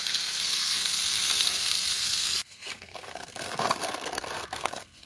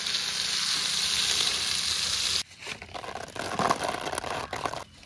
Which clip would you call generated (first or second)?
first